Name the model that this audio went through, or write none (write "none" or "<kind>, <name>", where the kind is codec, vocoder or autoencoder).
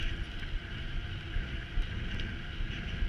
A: none